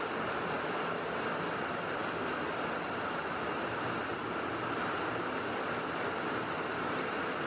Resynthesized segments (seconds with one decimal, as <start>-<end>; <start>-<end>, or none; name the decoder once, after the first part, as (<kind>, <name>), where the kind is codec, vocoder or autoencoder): none